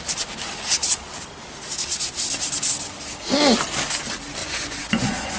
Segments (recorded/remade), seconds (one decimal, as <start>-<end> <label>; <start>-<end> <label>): 0.0-4.4 recorded; 4.4-5.4 remade